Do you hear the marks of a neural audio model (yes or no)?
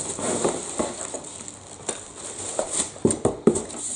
yes